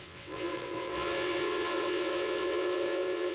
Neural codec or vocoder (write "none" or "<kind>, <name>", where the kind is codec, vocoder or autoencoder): vocoder, WaveNeXt